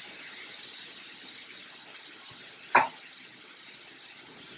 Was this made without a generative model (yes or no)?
yes